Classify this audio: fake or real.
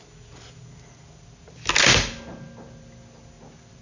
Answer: real